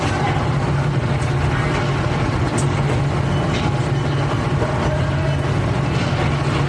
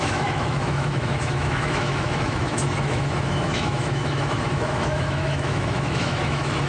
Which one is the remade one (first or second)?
second